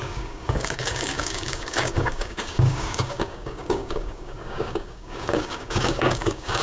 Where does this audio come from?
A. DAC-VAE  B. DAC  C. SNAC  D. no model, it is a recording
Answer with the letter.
B